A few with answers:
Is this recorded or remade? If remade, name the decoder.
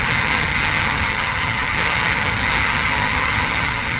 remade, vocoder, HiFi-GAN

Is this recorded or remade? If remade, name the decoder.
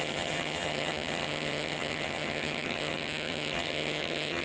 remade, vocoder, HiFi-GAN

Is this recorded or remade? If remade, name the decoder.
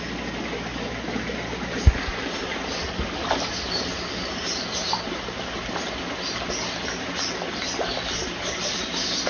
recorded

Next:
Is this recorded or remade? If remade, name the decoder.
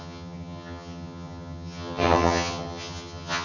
remade, vocoder, HiFi-GAN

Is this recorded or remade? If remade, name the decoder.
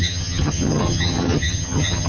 remade, vocoder, HiFi-GAN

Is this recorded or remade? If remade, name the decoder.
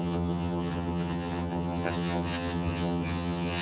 remade, vocoder, HiFi-GAN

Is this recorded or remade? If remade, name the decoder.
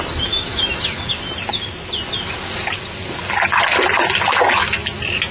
recorded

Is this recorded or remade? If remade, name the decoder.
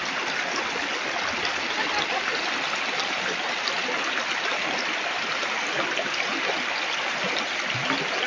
recorded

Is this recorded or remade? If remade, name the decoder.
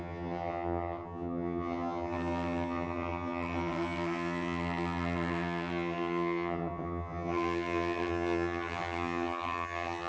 remade, vocoder, HiFi-GAN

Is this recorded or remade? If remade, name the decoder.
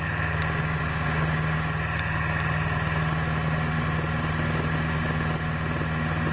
recorded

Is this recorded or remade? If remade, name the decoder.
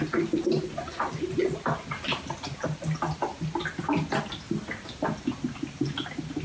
recorded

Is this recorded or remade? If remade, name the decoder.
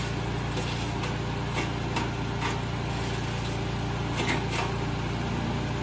recorded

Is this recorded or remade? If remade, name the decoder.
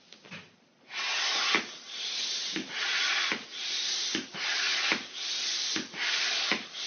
recorded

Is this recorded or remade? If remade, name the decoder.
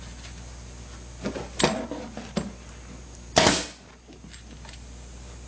recorded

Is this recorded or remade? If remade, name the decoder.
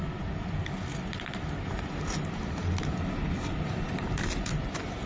recorded